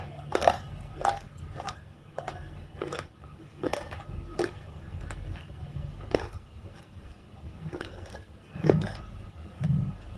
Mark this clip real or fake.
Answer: fake